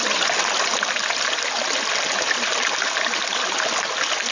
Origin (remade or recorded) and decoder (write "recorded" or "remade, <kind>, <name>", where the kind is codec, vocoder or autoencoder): recorded